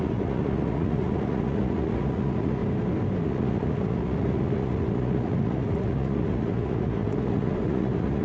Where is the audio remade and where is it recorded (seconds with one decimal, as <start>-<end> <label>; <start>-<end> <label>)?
0.0-2.6 remade; 2.6-3.2 recorded; 3.2-8.2 remade